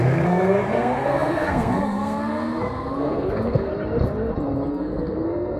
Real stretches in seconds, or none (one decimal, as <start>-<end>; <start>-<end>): 3.7-4.7